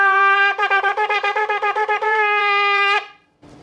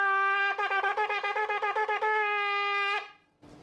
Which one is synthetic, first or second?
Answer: first